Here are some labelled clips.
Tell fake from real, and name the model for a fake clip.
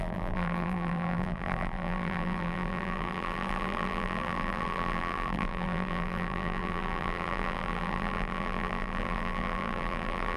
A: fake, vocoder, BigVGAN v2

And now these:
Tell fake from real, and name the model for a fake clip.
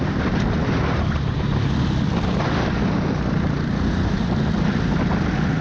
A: real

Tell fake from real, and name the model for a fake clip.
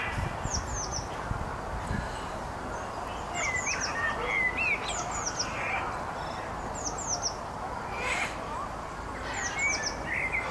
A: real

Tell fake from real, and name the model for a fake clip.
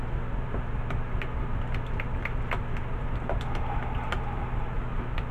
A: real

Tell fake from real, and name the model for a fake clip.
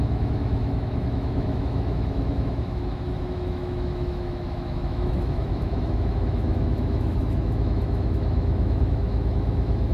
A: fake, autoencoder, DAC-VAE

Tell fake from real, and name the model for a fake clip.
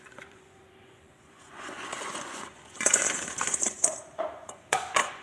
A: fake, vocoder, Vocos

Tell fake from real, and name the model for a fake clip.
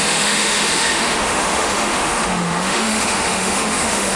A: fake, autoencoder, DAC-VAE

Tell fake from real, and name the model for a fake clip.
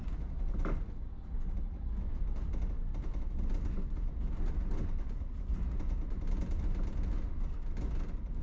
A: real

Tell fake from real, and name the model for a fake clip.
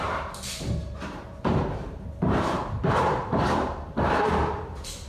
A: fake, vocoder, BigVGAN v2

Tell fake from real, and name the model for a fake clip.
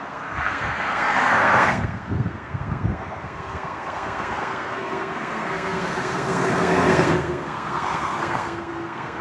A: fake, codec, SNAC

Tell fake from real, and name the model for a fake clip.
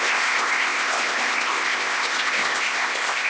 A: fake, codec, ZipCodec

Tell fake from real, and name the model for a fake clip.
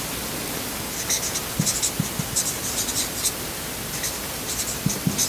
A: real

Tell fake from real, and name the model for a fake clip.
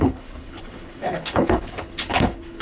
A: fake, codec, HILCodec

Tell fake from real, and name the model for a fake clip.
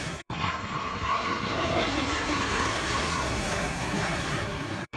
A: fake, codec, SNAC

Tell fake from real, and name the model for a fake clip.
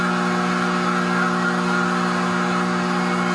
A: real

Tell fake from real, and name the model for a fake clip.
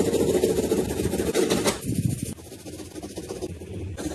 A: real